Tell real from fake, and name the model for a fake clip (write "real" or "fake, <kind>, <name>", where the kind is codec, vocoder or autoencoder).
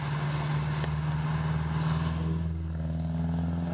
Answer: real